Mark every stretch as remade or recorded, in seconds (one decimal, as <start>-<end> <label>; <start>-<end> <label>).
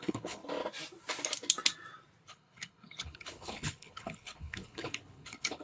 0.0-0.4 remade; 0.4-2.3 recorded; 2.3-5.6 remade